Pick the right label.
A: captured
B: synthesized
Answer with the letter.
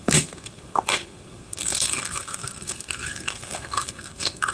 B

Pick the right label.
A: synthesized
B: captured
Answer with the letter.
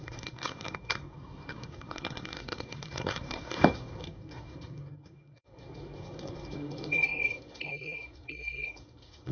A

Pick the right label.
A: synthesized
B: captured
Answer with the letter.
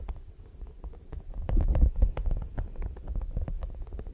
B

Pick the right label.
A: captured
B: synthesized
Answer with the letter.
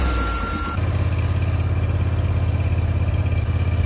A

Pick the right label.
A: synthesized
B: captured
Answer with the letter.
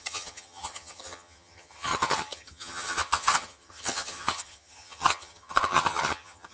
A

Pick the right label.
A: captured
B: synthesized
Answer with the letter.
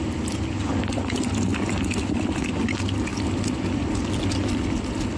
A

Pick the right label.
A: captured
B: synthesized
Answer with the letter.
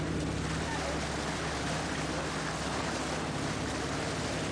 A